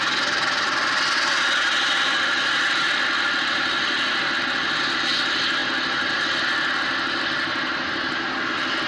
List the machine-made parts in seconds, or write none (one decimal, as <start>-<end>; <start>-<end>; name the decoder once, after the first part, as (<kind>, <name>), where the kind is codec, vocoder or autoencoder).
none